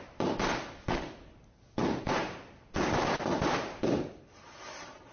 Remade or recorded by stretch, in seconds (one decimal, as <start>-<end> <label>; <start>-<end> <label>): 0.0-5.1 recorded